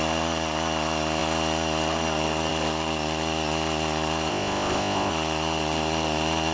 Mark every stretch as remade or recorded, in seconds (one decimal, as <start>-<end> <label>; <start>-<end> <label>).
0.0-4.3 recorded; 4.3-5.1 remade; 5.1-6.5 recorded